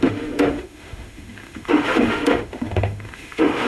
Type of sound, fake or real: fake